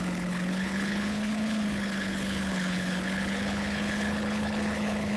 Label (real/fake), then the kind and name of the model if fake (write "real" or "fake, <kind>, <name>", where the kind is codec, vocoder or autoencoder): fake, codec, HILCodec